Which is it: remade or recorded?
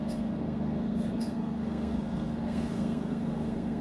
remade